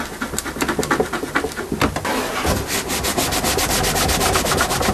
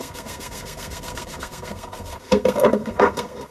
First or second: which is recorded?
first